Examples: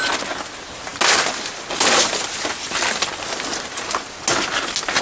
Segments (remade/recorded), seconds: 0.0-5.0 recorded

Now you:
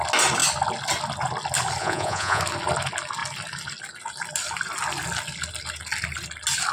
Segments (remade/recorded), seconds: 0.0-1.8 recorded; 1.8-2.4 remade; 2.4-6.7 recorded

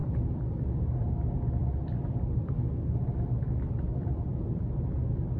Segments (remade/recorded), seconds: 0.0-1.1 remade; 1.1-1.6 recorded; 1.6-4.4 remade; 4.4-5.4 recorded

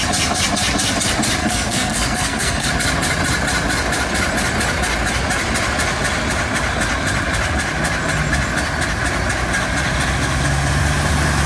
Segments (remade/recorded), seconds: 0.0-1.4 recorded; 1.4-2.7 remade; 2.7-11.5 recorded

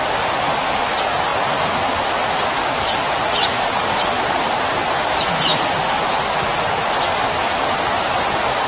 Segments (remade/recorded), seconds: 0.0-8.7 recorded

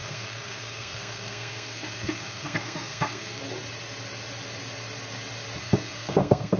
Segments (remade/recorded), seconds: 0.0-3.4 remade; 3.4-5.6 recorded; 5.6-6.6 remade

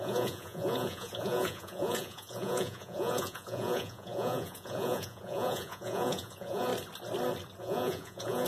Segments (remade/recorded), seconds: 0.0-6.7 remade; 6.7-7.6 recorded; 7.6-8.5 remade

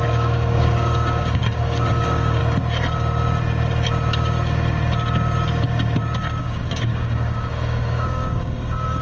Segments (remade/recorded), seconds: 0.0-2.4 remade; 2.4-6.4 recorded; 6.4-9.0 remade